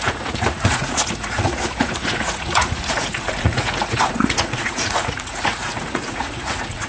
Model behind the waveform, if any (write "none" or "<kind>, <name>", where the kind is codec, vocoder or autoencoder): vocoder, Vocos